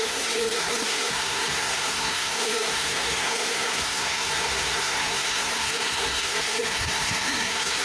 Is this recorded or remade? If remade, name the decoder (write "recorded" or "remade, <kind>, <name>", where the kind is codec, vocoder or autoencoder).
remade, codec, SNAC